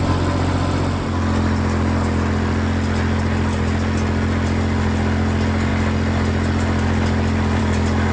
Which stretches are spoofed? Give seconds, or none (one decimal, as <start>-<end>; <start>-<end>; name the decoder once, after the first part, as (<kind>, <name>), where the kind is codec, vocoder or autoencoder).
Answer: none

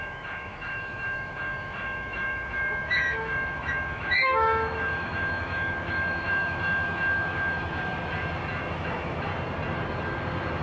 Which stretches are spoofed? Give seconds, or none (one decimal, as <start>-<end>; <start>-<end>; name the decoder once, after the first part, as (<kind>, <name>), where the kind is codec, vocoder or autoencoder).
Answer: 0.0-7.9 (autoencoder, DAC-VAE); 8.7-9.3

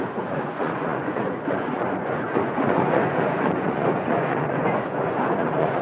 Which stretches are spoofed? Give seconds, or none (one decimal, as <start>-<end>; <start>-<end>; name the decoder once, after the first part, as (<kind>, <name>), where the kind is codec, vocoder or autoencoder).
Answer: 0.0-5.8 (vocoder, Vocos)

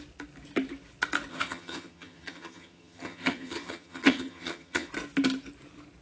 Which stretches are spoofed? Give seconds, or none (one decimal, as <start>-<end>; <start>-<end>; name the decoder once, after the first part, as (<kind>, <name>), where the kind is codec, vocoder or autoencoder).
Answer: 1.3-4.9 (vocoder, HiFi-GAN)

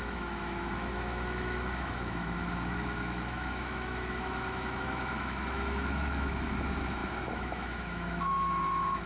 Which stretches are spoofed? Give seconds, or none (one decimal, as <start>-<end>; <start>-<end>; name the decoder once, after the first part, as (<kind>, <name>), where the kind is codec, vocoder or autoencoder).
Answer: 0.0-9.1 (autoencoder, DAC-VAE)

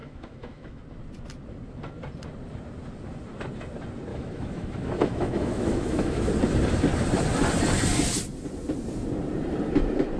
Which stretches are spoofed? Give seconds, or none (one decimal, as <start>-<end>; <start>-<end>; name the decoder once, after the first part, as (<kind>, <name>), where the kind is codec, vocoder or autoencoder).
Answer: 0.0-0.8 (autoencoder, DAC-VAE); 4.1-6.3

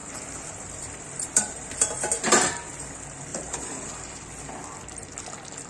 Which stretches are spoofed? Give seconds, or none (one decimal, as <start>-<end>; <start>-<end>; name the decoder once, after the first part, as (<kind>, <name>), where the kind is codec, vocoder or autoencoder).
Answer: 0.0-2.1 (vocoder, BigVGAN v2); 3.3-4.4

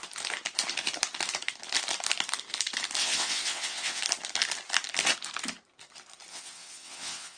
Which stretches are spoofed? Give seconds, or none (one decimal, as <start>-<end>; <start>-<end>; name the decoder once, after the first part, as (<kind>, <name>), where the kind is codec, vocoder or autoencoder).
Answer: 3.0-4.0 (vocoder, WaveNeXt); 6.3-7.4